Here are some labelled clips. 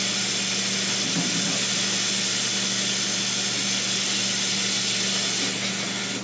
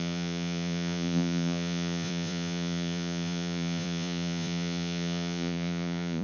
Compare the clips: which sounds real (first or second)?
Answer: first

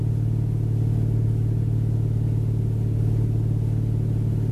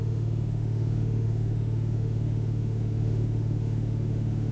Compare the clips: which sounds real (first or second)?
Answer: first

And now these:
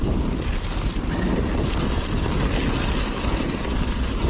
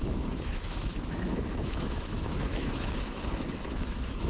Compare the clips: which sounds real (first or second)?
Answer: first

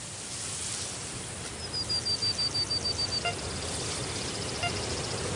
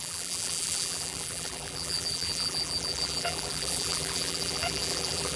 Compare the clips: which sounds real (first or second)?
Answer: first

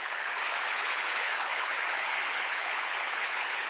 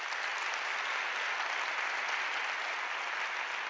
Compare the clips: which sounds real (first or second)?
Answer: second